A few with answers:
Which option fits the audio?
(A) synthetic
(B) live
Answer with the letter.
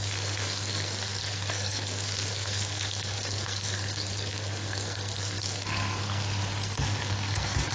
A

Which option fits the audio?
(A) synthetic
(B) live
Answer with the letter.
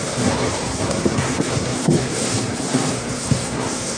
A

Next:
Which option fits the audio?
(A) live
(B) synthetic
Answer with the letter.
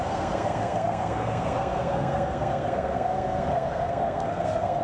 B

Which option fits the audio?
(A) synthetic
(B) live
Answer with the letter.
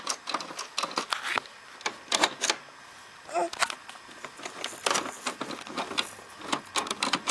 B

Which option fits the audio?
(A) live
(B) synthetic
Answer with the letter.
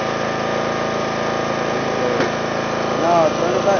A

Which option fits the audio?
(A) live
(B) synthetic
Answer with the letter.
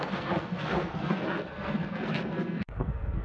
B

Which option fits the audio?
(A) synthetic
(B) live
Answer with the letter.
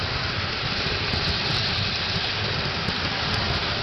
B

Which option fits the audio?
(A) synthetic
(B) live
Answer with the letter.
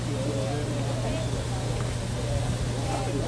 B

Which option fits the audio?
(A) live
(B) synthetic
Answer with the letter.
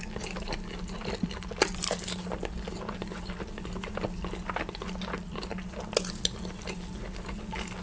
A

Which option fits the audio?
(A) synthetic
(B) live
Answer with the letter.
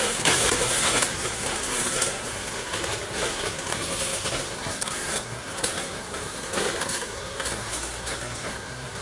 A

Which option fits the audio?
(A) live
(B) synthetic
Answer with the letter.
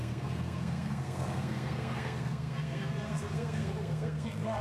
B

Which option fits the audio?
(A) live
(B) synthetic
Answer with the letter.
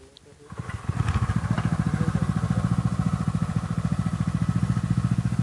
A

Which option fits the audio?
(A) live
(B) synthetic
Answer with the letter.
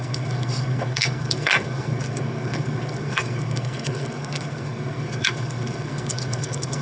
B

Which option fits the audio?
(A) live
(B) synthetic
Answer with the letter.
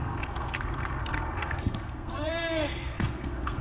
B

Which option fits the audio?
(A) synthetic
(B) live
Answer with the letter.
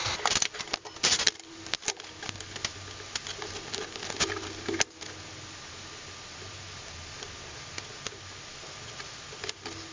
B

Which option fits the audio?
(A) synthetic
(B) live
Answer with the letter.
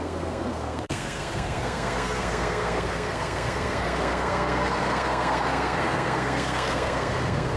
A